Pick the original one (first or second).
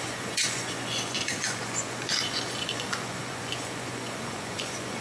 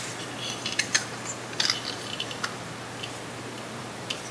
second